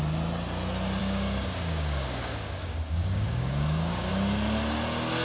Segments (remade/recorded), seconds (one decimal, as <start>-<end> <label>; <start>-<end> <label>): 0.0-1.0 recorded; 1.0-4.1 remade; 4.1-5.2 recorded